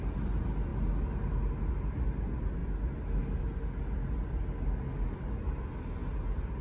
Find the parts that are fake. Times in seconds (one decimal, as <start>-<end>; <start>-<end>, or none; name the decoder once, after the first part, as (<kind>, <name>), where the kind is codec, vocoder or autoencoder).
none